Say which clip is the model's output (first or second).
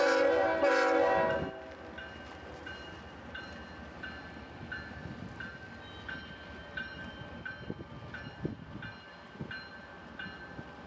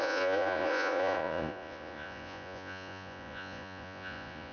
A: second